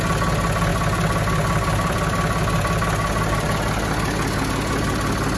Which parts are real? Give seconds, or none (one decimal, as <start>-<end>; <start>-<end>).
0.0-5.4